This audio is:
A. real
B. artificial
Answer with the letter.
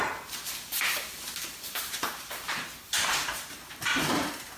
B